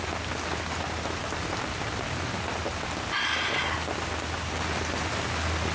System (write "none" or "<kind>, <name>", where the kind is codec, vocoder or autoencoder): none